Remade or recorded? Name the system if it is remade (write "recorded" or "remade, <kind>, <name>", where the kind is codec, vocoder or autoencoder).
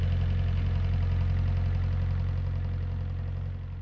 recorded